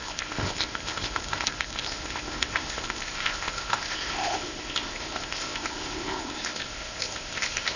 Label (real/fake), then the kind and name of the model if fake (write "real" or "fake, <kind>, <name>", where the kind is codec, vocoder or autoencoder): fake, codec, ZipCodec